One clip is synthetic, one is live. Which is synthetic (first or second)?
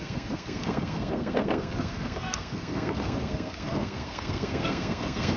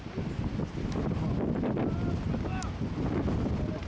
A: first